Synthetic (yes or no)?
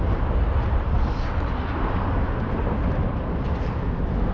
no